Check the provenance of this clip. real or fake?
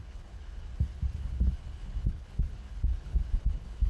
fake